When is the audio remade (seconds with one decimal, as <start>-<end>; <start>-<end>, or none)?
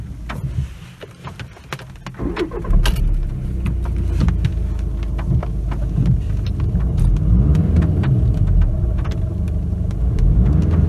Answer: 7.5-8.4